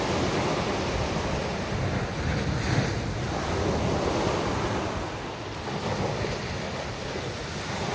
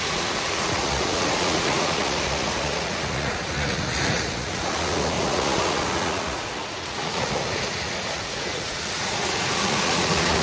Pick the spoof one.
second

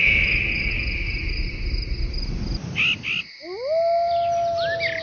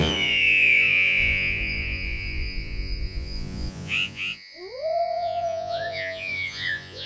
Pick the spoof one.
second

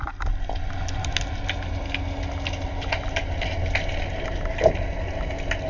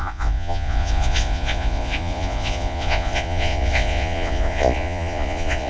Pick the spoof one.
second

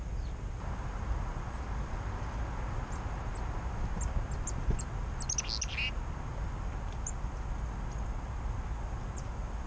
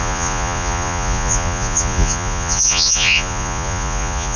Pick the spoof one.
second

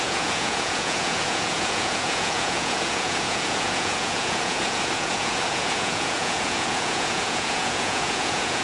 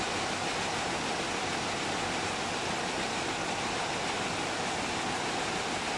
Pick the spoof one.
first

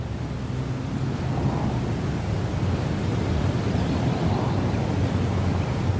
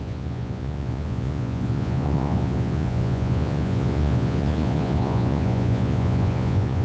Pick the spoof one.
second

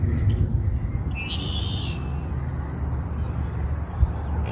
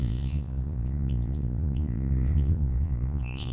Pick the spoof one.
second